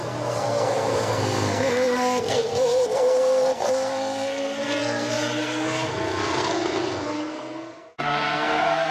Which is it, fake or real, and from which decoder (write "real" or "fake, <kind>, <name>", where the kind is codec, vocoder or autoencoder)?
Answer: fake, codec, SNAC